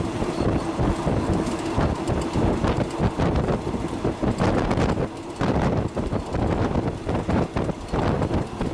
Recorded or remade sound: recorded